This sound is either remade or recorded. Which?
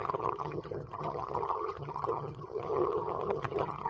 remade